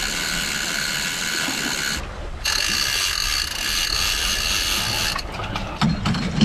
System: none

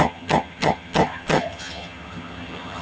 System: vocoder, HiFi-GAN